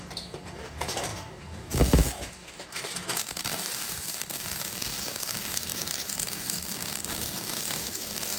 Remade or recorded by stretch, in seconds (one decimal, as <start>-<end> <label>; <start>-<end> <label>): 0.0-8.4 remade